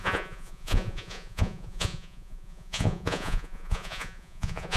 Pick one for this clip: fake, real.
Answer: fake